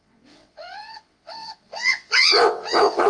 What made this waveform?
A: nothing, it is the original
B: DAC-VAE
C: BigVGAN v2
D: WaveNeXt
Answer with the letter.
D